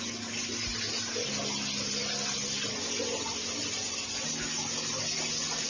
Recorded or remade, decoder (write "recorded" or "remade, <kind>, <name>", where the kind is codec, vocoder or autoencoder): recorded